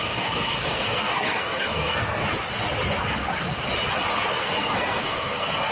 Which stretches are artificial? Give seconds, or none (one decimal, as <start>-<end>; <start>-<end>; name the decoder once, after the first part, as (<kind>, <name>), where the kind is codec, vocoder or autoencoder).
0.0-2.2 (codec, SNAC); 4.4-5.7